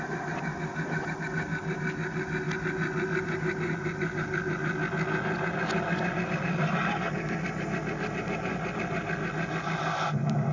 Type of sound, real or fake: real